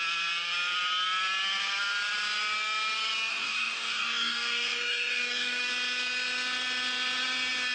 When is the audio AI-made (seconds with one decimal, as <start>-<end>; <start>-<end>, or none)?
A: 3.3-5.7